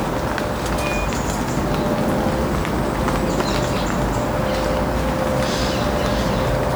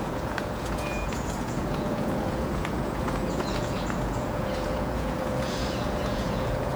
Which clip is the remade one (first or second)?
second